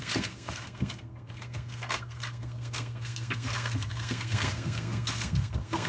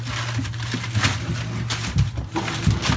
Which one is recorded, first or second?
second